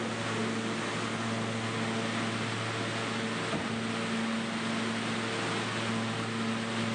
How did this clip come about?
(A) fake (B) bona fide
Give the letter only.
B